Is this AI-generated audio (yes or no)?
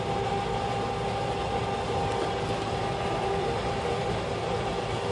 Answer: no